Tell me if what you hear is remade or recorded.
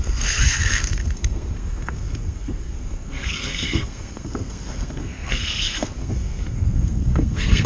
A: remade